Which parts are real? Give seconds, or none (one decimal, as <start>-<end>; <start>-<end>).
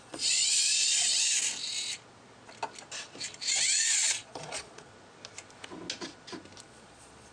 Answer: 1.1-3.8; 4.9-6.6